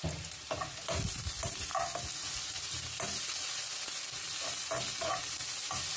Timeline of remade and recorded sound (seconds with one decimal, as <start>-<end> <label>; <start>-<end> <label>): 0.0-6.0 recorded